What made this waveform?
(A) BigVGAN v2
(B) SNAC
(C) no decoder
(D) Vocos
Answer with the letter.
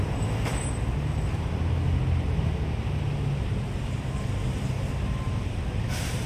C